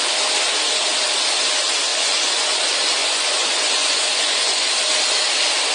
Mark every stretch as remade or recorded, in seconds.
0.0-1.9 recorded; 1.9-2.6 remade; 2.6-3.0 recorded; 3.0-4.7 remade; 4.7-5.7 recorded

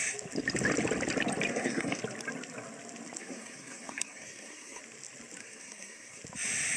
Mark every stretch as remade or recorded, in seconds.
0.0-1.5 recorded; 1.5-2.0 remade; 2.0-3.2 recorded; 3.2-4.8 remade; 4.8-5.4 recorded; 5.4-6.2 remade; 6.2-6.8 recorded